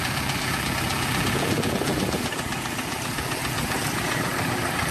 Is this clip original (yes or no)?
no